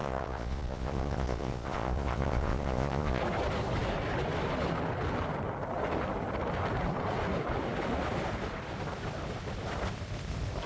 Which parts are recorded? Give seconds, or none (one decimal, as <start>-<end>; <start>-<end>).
3.2-10.7